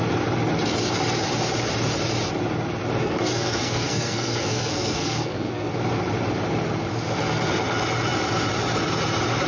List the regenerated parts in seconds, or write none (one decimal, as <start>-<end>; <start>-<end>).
3.0-5.7